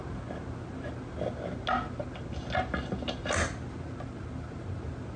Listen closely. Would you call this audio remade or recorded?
recorded